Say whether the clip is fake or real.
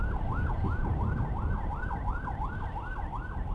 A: fake